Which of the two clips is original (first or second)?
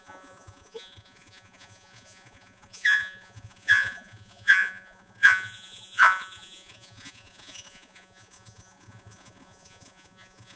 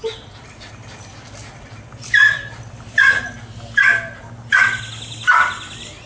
second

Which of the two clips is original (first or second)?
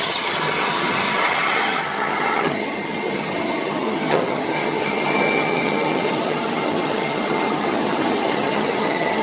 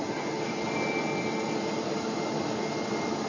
second